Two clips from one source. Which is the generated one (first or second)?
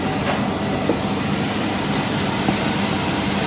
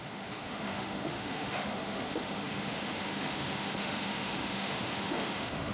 second